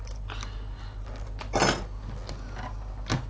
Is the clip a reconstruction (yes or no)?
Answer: no